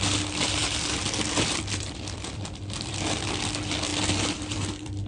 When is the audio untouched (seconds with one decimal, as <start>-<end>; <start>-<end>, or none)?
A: 0.0-0.6; 2.9-3.9